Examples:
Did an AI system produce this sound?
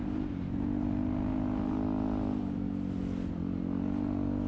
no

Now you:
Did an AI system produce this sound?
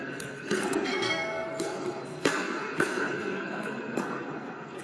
yes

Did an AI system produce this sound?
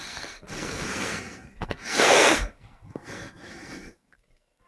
yes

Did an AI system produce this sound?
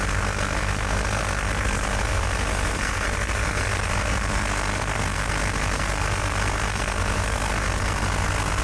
yes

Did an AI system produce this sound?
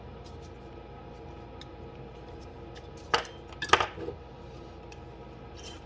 no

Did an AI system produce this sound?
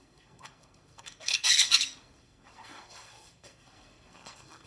yes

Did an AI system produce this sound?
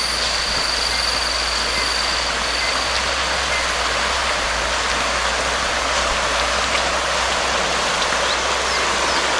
no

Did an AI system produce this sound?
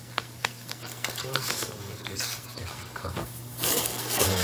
yes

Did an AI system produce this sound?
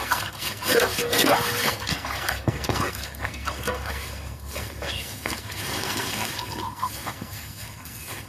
yes